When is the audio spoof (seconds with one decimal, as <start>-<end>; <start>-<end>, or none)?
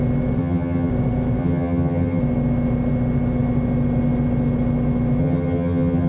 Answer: 0.4-0.9; 1.4-2.2; 5.2-6.1